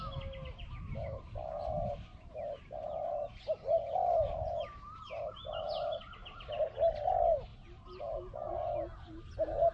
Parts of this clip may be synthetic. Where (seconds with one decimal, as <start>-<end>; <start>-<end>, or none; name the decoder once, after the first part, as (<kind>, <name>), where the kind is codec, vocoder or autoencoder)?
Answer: 2.1-5.5 (vocoder, BigVGAN v2)